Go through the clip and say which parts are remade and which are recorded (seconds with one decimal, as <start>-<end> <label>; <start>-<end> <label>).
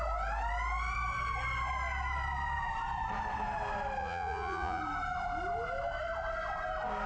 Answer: 0.0-4.0 recorded; 4.0-4.8 remade; 4.8-7.1 recorded